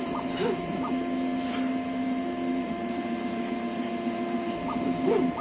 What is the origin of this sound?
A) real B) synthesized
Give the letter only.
B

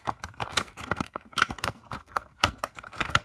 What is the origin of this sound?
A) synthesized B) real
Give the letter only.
A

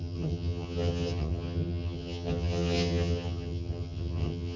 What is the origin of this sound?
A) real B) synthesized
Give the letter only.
B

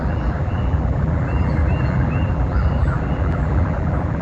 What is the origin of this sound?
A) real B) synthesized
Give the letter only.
B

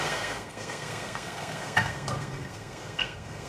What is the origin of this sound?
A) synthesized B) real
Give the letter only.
A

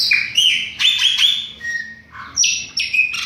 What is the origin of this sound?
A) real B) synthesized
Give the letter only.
A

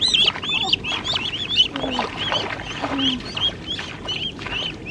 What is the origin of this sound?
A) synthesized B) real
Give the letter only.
B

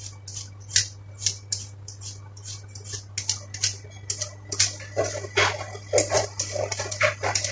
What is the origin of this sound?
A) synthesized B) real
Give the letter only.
B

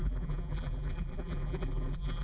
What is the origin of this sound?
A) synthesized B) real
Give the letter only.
A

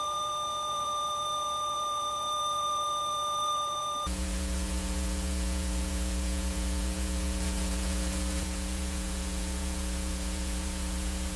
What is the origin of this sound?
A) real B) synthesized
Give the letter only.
B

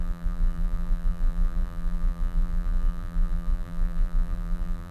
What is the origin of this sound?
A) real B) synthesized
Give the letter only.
B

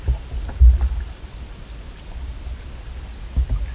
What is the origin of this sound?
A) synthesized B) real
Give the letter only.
B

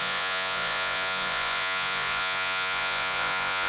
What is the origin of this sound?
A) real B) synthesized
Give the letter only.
B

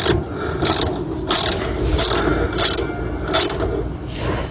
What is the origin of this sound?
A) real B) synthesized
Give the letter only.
A